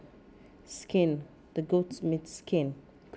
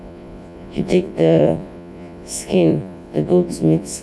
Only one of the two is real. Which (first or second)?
first